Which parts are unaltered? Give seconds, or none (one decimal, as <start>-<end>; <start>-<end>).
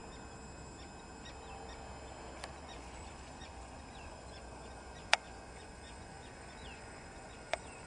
0.0-2.5